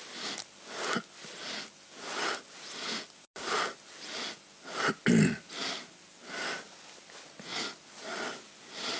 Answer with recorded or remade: recorded